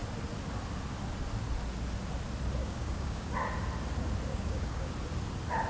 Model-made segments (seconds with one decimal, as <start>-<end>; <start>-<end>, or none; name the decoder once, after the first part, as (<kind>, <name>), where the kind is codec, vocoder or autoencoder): 2.6-3.3 (codec, DAC); 4.3-4.9